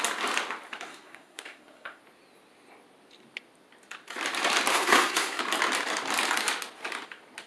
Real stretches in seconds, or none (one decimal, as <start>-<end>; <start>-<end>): 0.0-0.9; 2.0-4.7; 5.4-7.5